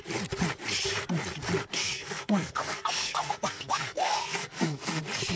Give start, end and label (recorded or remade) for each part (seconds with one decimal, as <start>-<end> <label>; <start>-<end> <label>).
0.0-1.8 recorded; 1.8-5.0 remade; 5.0-5.4 recorded